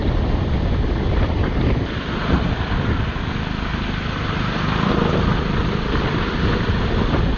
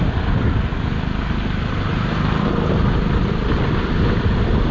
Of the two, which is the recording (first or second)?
second